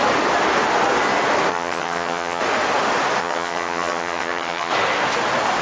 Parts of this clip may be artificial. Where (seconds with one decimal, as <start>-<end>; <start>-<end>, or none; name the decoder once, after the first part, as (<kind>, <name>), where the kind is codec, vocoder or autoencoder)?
1.5-2.4 (vocoder, HiFi-GAN); 3.2-4.7